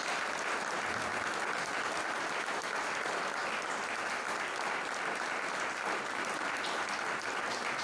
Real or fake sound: real